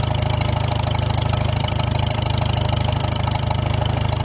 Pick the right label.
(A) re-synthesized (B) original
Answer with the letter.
A